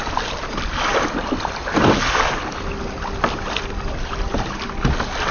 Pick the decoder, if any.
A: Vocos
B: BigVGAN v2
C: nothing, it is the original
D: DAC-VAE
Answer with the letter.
C